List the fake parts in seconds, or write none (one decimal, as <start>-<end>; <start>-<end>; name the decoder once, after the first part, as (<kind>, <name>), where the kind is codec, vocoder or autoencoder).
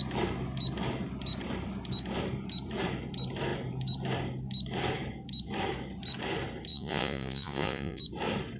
6.7-8.0 (vocoder, Vocos)